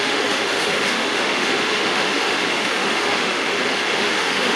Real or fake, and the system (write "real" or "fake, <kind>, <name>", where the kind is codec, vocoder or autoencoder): fake, autoencoder, DAC-VAE